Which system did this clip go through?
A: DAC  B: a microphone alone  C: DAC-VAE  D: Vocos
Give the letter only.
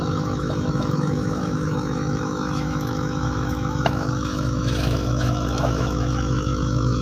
C